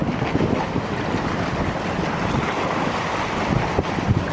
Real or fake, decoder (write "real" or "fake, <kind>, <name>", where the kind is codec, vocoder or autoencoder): real